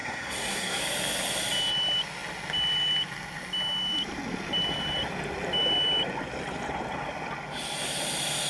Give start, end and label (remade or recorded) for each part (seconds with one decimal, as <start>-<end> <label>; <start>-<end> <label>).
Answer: 0.0-0.8 remade; 0.8-8.5 recorded